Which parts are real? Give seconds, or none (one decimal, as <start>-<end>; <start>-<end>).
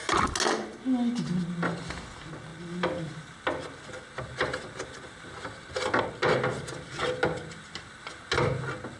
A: 0.0-9.0